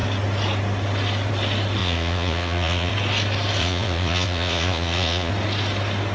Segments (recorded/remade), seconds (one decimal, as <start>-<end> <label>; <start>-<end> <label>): 0.0-1.8 recorded; 1.8-2.9 remade; 2.9-3.6 recorded; 3.6-5.3 remade; 5.3-6.1 recorded